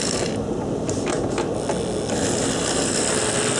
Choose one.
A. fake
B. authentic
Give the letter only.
B